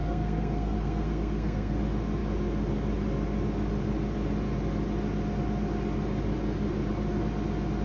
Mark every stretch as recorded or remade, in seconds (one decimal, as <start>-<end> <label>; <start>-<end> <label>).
0.0-1.8 remade; 1.8-7.8 recorded